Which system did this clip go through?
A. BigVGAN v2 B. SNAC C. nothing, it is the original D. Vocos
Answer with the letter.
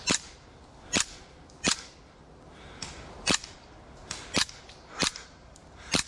C